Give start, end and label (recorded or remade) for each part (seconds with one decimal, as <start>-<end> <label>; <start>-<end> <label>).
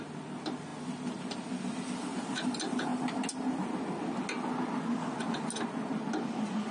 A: 0.0-6.7 recorded